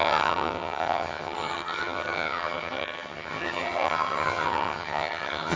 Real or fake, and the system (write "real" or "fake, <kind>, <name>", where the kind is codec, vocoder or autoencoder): fake, vocoder, HiFi-GAN